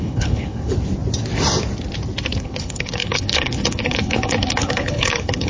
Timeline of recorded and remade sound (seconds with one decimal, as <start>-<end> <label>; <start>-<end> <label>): 0.0-0.7 remade; 0.7-2.4 recorded; 2.4-5.5 remade